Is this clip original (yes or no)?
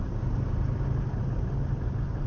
yes